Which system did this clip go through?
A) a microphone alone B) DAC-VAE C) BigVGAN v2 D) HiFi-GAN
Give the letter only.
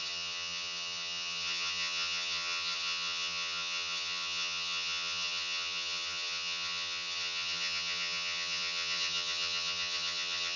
D